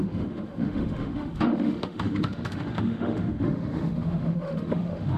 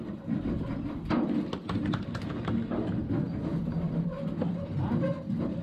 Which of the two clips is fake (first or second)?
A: first